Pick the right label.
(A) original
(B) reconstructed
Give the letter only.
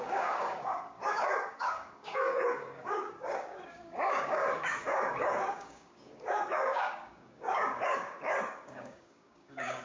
B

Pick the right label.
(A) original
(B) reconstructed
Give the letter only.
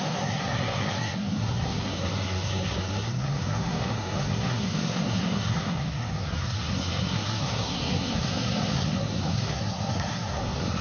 B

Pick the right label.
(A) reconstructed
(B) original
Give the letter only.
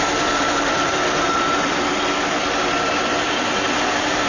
A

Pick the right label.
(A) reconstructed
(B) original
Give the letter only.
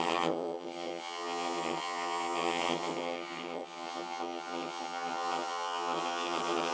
A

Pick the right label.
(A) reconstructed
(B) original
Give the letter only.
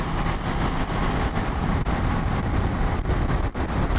B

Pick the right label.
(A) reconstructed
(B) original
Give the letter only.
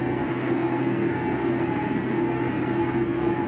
A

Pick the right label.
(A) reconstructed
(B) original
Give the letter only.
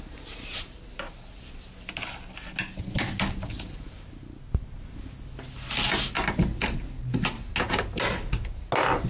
B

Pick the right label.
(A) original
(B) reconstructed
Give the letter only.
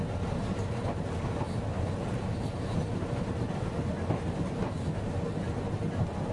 A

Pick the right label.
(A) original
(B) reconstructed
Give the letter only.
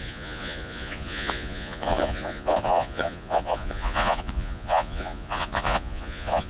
B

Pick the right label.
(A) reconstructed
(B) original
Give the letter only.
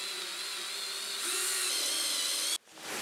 B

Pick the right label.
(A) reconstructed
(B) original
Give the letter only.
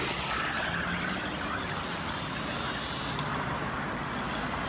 B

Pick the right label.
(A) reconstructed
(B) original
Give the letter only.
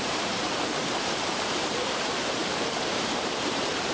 A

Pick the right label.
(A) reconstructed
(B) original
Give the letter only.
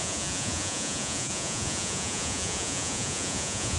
A